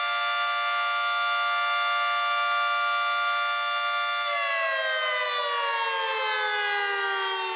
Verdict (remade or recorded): recorded